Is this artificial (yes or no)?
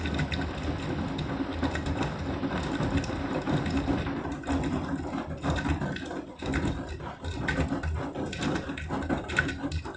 no